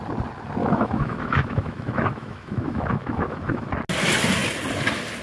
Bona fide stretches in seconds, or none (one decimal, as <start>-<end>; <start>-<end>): 0.0-0.6; 3.7-5.2